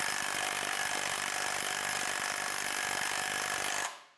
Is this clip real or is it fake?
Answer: real